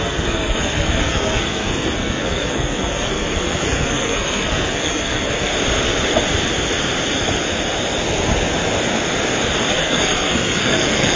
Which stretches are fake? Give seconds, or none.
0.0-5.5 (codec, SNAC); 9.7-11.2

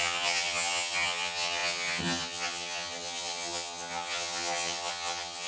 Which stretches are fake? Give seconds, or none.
0.0-5.5 (vocoder, HiFi-GAN)

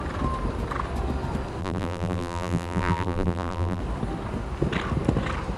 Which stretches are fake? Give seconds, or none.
1.6-3.8 (vocoder, BigVGAN v2)

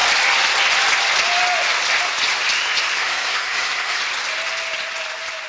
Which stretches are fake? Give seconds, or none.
3.0-4.0 (codec, SNAC)

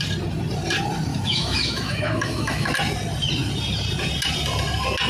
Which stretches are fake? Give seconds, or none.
1.1-2.7 (autoencoder, DAC-VAE)

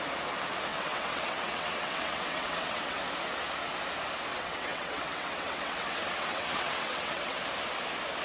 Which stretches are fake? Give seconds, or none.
0.7-3.0 (vocoder, WaveNeXt); 4.3-7.4

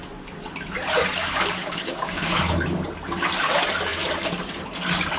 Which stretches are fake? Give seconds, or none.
1.6-2.4 (codec, DAC)